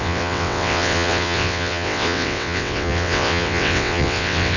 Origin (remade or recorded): remade